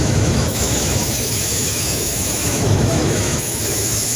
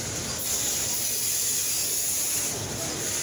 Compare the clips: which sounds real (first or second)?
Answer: second